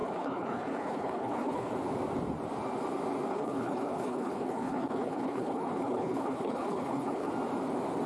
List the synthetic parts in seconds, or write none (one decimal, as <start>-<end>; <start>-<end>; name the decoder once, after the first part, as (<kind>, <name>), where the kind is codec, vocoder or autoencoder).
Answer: 0.0-1.7 (codec, HILCodec); 3.3-7.3